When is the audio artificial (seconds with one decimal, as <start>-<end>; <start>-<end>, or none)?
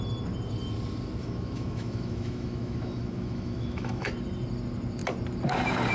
1.2-4.1